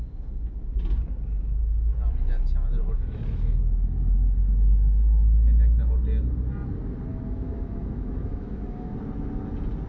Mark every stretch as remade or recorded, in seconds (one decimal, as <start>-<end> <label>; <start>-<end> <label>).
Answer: 0.0-2.8 recorded; 2.8-3.6 remade; 3.6-7.1 recorded; 7.1-8.9 remade; 8.9-9.9 recorded